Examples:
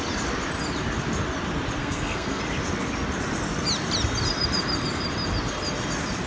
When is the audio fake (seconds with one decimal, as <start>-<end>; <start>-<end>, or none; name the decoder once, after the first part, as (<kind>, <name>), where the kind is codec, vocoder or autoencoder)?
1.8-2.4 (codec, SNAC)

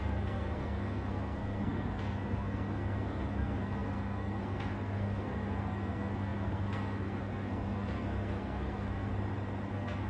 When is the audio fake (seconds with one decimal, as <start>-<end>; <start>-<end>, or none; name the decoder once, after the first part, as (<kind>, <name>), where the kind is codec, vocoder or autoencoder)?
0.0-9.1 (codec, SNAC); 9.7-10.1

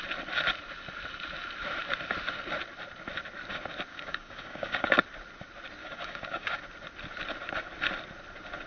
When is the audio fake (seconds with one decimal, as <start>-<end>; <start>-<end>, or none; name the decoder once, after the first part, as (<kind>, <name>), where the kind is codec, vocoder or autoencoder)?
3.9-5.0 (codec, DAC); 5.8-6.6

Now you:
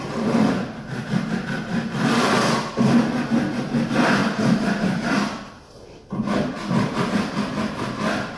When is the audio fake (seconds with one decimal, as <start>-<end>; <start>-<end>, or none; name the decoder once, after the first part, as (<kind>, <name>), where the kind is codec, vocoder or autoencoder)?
none

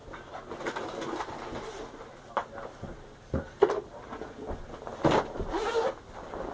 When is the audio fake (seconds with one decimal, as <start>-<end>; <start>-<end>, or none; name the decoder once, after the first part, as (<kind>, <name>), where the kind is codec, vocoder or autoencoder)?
none

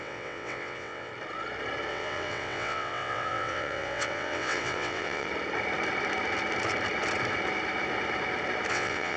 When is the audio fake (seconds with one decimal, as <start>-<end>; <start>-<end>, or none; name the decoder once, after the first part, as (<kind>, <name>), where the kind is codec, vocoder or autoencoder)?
0.0-1.1 (vocoder, WaveNeXt); 1.9-5.3; 8.7-9.2

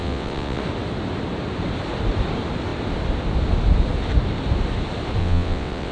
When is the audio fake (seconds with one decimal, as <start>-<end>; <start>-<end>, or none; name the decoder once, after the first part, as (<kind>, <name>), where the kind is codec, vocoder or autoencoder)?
0.0-0.6 (vocoder, WaveNeXt); 5.2-5.9